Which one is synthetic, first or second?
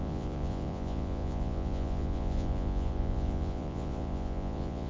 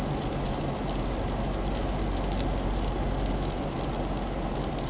first